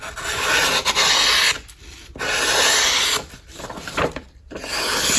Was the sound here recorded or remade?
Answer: recorded